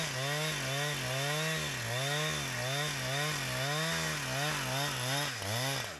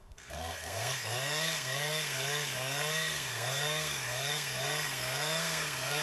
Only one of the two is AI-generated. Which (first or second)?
second